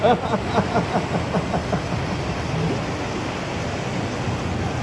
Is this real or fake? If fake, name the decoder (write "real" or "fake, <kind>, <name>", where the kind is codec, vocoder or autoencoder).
real